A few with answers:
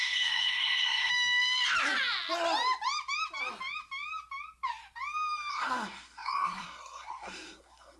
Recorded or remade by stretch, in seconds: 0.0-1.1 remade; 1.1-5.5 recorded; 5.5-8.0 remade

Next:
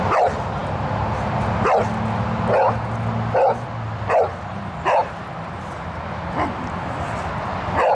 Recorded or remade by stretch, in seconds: 0.0-7.9 recorded